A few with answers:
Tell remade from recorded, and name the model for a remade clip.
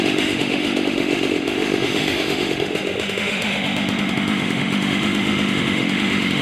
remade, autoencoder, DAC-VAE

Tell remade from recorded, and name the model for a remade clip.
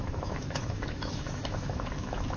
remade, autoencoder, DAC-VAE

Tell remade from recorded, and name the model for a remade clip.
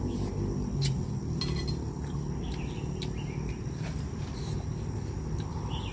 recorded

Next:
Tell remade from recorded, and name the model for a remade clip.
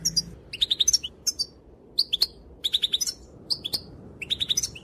recorded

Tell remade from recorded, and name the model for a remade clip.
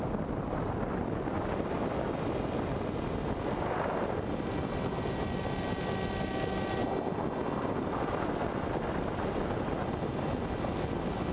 recorded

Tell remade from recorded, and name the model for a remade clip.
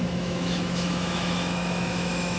remade, autoencoder, DAC-VAE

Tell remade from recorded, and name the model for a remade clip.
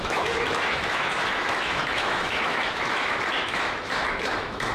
remade, autoencoder, DAC-VAE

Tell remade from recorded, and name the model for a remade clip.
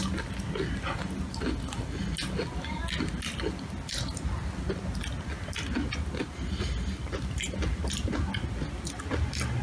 recorded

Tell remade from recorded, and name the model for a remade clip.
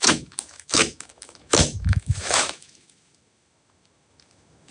remade, autoencoder, DAC-VAE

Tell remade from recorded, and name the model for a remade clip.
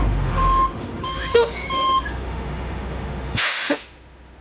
remade, autoencoder, DAC-VAE